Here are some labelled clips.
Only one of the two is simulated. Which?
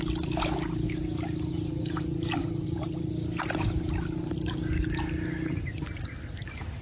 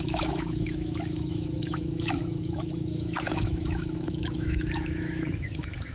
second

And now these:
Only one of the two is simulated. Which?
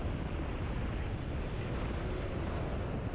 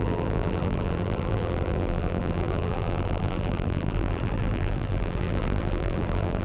second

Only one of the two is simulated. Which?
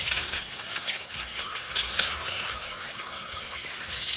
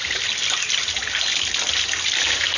first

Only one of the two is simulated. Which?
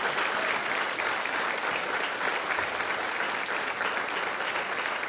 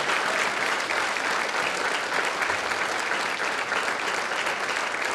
first